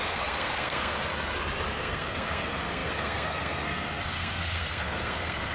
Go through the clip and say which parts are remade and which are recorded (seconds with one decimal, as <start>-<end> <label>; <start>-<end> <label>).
0.0-1.0 remade; 1.0-1.7 recorded; 1.7-5.5 remade